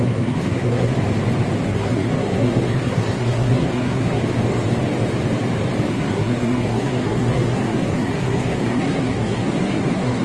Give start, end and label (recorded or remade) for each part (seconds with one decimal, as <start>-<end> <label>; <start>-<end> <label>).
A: 0.0-0.9 remade; 0.9-1.6 recorded; 1.6-4.2 remade; 4.2-5.9 recorded; 5.9-10.2 remade